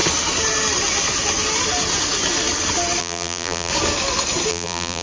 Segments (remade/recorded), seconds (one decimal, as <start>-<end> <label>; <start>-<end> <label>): 0.0-3.0 recorded; 3.0-3.7 remade; 3.7-4.5 recorded; 4.5-5.0 remade